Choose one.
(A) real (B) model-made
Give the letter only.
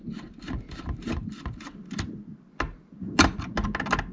A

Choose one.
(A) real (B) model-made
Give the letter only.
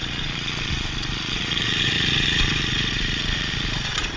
B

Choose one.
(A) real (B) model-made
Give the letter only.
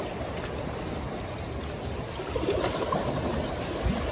A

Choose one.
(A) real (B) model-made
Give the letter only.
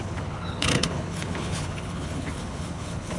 B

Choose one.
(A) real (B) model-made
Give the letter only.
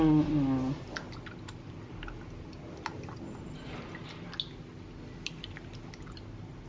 A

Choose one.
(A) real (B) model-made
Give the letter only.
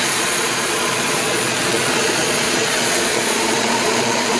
B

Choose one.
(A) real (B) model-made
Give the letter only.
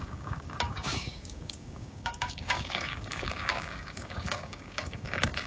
B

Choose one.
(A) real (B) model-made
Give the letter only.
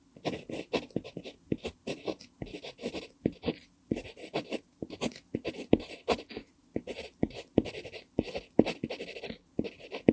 A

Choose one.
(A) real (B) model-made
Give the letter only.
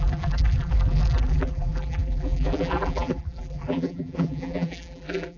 B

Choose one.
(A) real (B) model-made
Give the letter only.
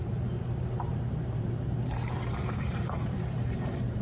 B